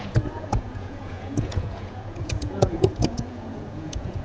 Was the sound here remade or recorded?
remade